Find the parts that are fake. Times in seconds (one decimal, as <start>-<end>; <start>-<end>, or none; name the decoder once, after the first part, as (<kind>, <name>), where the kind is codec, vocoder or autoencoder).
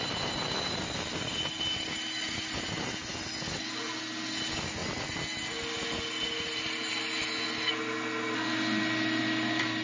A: none